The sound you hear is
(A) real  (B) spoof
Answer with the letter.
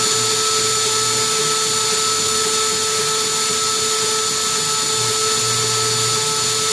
A